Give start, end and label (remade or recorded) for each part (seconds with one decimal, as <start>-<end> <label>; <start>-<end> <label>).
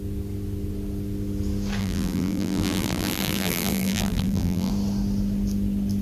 0.0-1.8 recorded; 1.8-4.7 remade; 4.7-6.0 recorded